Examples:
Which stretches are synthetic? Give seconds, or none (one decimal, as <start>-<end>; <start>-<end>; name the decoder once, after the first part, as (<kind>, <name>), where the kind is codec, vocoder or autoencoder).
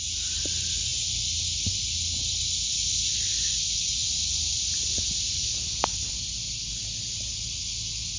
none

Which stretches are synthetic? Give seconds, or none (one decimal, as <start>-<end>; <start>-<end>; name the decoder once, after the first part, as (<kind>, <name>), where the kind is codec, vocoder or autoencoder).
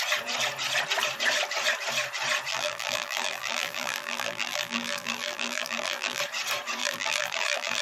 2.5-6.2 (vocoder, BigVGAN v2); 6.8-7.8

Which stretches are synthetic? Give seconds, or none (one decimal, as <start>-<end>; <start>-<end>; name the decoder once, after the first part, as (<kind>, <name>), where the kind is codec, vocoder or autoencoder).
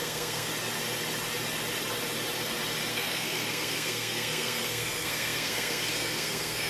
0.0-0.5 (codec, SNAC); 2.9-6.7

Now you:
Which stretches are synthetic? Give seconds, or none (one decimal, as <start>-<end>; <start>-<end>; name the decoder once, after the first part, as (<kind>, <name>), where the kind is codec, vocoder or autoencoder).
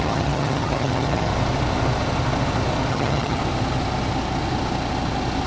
0.0-1.3 (vocoder, HiFi-GAN); 2.9-3.4